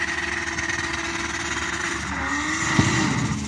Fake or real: real